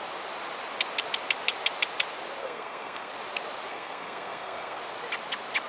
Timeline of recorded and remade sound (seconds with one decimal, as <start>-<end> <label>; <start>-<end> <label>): 0.0-2.4 recorded; 2.4-3.1 remade; 3.1-3.7 recorded; 3.7-4.8 remade; 4.8-5.7 recorded